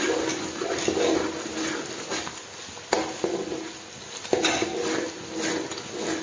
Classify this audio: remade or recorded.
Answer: recorded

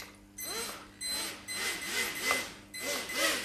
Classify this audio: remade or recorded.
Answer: recorded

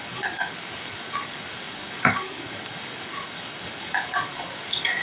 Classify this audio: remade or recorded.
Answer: remade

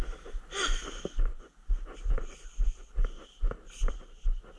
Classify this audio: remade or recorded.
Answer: recorded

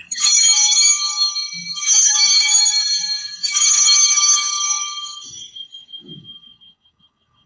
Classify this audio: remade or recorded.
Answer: remade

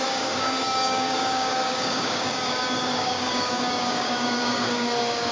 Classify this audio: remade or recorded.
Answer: remade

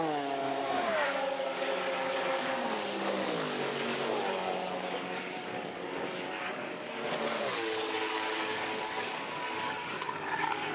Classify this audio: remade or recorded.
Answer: remade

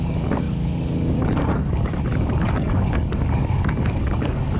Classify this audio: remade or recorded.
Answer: remade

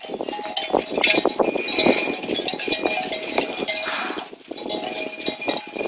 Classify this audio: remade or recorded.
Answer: recorded